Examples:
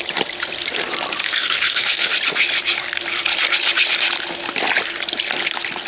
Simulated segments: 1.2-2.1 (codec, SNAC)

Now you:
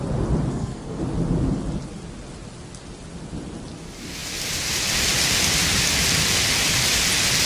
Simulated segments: 0.5-1.0 (codec, SNAC)

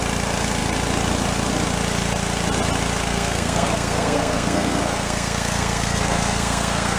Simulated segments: 3.0-7.0 (codec, SNAC)

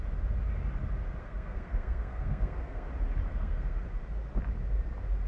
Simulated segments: 1.2-2.9 (codec, SNAC); 3.3-3.8